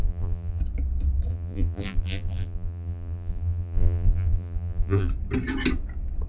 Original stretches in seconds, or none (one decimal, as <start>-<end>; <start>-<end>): 0.6-1.3; 5.1-6.3